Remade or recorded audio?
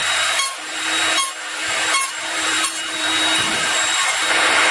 remade